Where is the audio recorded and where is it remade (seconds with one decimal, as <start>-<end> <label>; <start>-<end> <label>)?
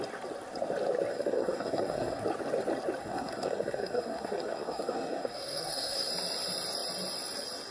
0.0-1.1 recorded; 1.1-2.2 remade; 2.2-3.0 recorded; 3.0-6.1 remade; 6.1-7.7 recorded